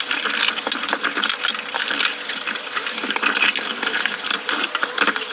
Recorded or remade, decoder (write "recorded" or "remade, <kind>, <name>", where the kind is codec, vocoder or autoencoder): recorded